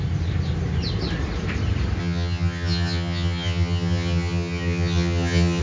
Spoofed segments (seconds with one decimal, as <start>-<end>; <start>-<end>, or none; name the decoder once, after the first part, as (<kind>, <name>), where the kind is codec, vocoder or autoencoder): 2.0-5.6 (vocoder, HiFi-GAN)